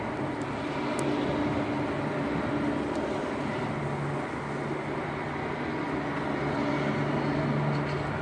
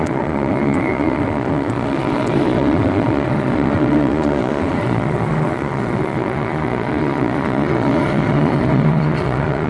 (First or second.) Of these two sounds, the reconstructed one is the second